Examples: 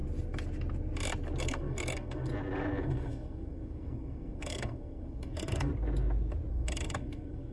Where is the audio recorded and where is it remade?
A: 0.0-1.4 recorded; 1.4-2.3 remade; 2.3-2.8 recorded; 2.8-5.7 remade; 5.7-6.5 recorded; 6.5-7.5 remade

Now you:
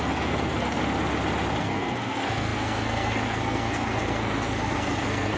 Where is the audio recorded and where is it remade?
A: 0.0-0.8 remade; 0.8-1.6 recorded; 1.6-5.4 remade

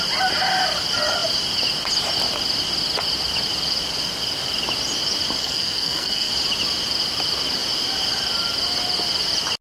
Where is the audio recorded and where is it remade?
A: 0.0-5.4 recorded; 5.4-6.3 remade; 6.3-9.6 recorded

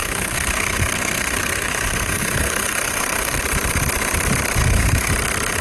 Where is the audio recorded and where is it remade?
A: 0.0-3.4 remade; 3.4-4.6 recorded; 4.6-5.1 remade; 5.1-5.6 recorded